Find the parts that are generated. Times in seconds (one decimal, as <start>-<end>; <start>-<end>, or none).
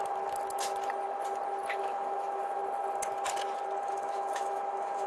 1.8-2.6; 3.9-5.1